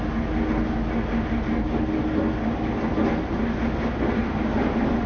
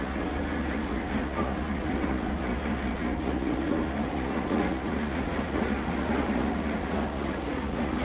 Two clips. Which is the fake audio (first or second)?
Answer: second